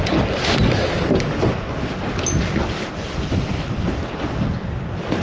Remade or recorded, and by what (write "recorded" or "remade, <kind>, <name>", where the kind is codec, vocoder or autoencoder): recorded